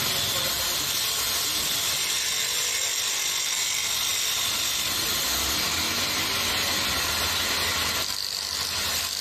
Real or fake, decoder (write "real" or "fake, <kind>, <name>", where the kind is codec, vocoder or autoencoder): real